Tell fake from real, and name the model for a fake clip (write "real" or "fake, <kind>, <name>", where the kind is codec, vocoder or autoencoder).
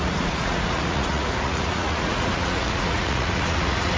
fake, vocoder, Vocos